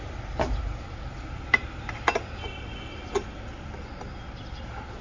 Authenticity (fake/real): real